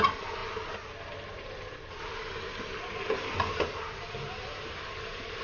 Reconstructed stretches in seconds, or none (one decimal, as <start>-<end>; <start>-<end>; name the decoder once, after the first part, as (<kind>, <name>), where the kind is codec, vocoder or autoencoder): none

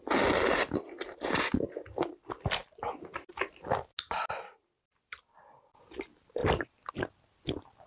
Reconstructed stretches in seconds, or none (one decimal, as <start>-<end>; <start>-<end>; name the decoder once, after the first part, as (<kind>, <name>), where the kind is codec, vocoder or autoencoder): none

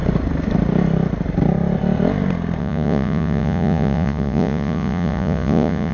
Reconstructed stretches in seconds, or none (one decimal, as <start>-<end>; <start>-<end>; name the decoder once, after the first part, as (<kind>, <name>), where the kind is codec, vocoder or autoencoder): 2.6-5.9 (vocoder, Vocos)

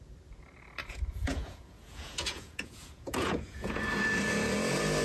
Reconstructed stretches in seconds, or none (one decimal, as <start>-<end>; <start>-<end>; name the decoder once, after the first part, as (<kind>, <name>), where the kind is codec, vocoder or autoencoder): 0.8-3.8 (vocoder, Vocos)

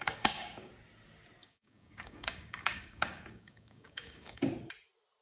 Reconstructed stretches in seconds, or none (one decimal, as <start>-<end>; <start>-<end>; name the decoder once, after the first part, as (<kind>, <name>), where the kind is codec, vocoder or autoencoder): 0.0-0.7 (codec, DAC); 1.4-4.5

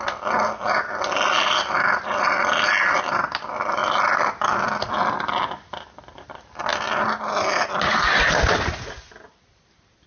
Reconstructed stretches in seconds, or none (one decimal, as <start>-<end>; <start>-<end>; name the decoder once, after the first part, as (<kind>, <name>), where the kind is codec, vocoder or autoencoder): 0.0-6.7 (vocoder, BigVGAN v2); 9.3-10.1

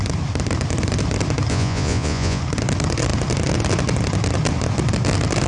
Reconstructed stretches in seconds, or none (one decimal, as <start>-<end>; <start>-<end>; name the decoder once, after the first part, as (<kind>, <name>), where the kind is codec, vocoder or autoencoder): 1.5-2.4 (vocoder, Vocos)

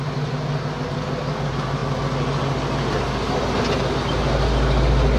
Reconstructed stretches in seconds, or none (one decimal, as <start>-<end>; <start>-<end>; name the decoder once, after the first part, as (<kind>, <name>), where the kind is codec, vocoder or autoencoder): none